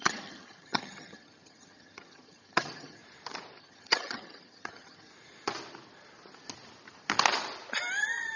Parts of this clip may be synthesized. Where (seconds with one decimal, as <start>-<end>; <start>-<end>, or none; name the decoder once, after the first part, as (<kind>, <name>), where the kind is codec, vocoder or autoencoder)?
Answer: 0.0-3.0 (vocoder, HiFi-GAN); 3.6-5.1